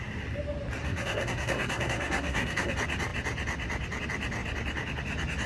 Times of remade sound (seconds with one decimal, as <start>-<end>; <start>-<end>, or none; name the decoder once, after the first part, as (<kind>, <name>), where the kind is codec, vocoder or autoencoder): 0.8-2.7 (codec, SNAC)